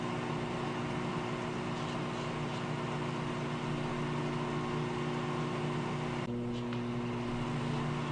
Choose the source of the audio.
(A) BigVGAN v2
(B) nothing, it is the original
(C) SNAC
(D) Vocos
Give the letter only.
B